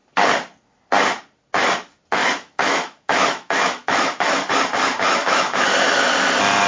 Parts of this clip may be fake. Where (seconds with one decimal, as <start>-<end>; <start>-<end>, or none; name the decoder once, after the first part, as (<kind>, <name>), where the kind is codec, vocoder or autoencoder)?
2.2-4.5 (autoencoder, DAC-VAE); 5.2-6.1